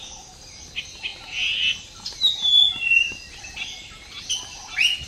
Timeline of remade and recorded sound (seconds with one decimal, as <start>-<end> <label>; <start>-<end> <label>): 0.0-5.1 recorded